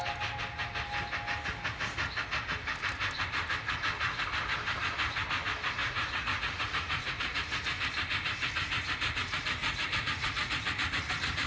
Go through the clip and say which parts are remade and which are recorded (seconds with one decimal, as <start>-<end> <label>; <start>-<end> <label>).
0.0-5.8 recorded; 5.8-7.8 remade; 7.8-9.6 recorded; 9.6-10.5 remade; 10.5-11.5 recorded